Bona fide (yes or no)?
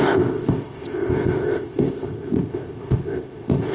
no